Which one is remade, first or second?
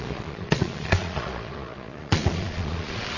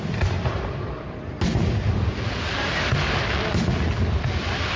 first